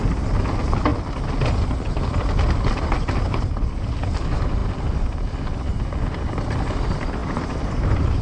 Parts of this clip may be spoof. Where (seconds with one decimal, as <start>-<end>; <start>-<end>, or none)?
7.2-8.2